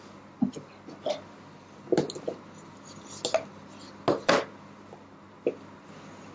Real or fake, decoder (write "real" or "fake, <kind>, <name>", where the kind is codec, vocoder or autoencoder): real